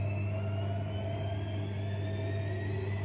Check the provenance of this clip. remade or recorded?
recorded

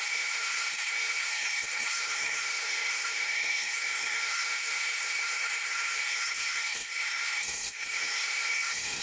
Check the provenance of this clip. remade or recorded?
remade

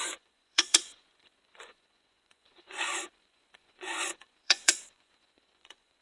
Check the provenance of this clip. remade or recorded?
remade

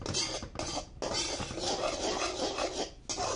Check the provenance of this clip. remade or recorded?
recorded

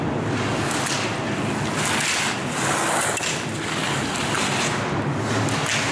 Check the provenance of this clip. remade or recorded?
recorded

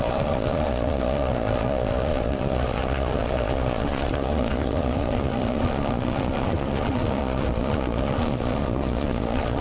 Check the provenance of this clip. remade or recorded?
remade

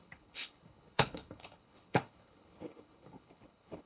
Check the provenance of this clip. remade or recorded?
remade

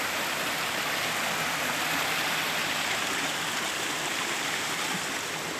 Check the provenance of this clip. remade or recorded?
recorded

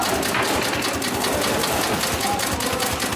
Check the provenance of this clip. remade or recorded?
recorded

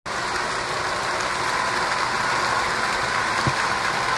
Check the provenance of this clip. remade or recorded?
recorded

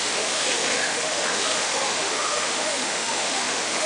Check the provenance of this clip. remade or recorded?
remade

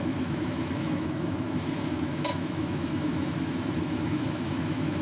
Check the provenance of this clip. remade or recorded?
remade